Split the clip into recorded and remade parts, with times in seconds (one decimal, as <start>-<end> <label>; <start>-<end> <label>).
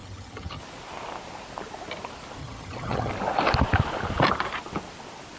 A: 0.0-0.6 remade; 0.6-2.4 recorded; 2.4-3.1 remade; 3.1-5.4 recorded